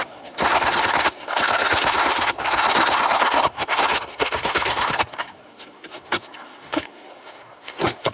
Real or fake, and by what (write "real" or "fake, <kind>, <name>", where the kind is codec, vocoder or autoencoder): fake, codec, SNAC